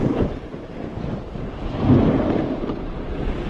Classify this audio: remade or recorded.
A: recorded